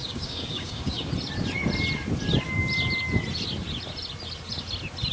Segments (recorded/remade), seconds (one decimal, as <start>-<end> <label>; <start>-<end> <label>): 0.0-1.1 remade; 1.1-5.1 recorded